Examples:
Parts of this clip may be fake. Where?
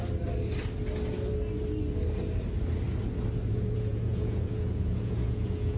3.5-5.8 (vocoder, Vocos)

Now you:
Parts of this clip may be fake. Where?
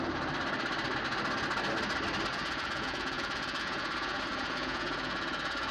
2.3-5.7 (vocoder, Vocos)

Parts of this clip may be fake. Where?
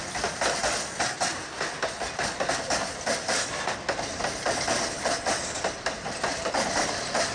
none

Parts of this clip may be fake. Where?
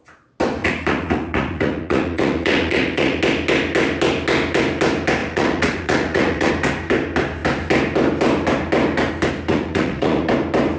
0.6-3.2 (vocoder, Vocos); 5.2-6.5; 9.5-10.3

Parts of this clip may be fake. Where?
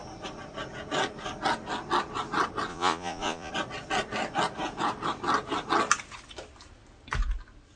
2.7-3.5 (vocoder, Vocos)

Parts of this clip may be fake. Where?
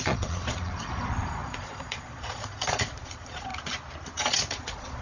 0.0-3.5 (vocoder, Vocos); 4.3-5.0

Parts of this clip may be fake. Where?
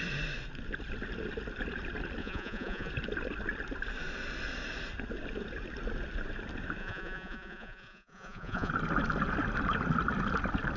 2.2-2.9 (vocoder, Vocos); 6.8-8.7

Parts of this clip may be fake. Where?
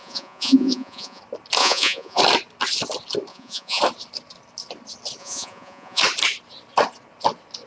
0.0-1.2 (vocoder, Vocos); 1.6-2.2; 3.3-3.8; 5.2-6.0